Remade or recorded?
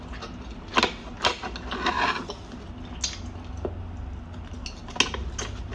recorded